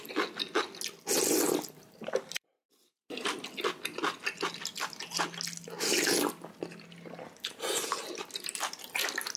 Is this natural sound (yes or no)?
yes